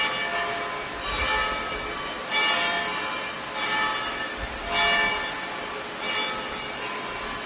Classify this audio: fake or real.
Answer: real